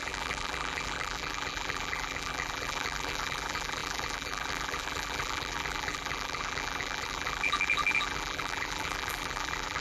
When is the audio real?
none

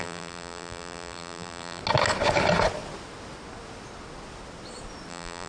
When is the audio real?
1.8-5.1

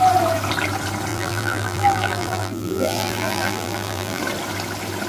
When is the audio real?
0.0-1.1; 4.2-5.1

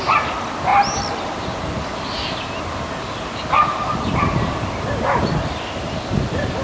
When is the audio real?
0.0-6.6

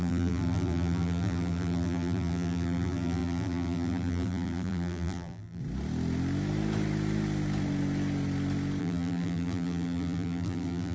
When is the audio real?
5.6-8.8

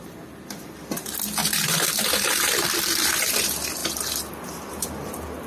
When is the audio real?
0.0-5.5

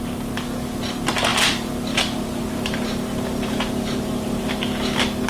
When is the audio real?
0.0-1.3; 4.5-5.3

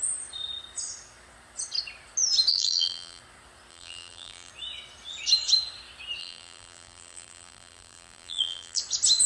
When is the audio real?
0.0-2.5; 3.2-3.7; 4.5-6.2; 8.8-9.3